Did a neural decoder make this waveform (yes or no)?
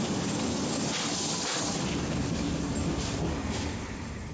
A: no